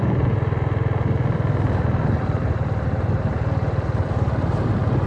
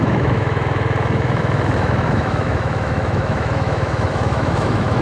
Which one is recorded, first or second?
first